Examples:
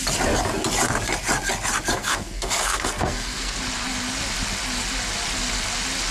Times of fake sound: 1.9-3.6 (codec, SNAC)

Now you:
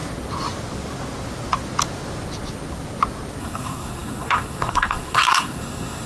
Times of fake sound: 3.4-6.1 (codec, SNAC)

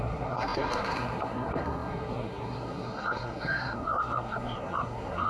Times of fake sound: 0.0-5.3 (codec, SNAC)

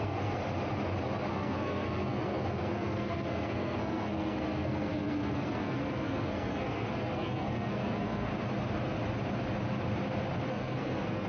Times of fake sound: 0.0-0.4 (codec, SNAC); 1.3-8.3; 10.5-11.3

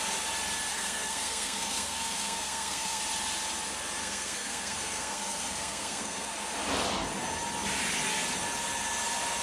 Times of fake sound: 0.7-3.0 (codec, SNAC); 4.0-6.3

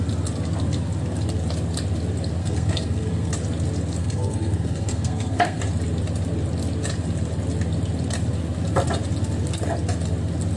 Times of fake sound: 2.4-3.3 (codec, SNAC); 4.0-5.6

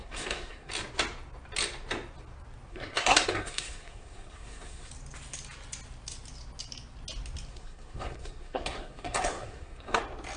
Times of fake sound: 0.0-0.7 (codec, SNAC); 2.7-4.9; 7.5-10.0

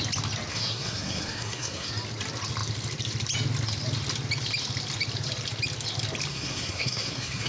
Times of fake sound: 0.5-1.9 (codec, SNAC); 6.3-7.5